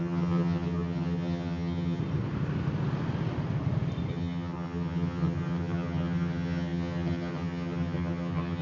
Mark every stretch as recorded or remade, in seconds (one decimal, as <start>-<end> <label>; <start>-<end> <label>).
0.0-2.0 remade; 2.0-4.1 recorded; 4.1-8.6 remade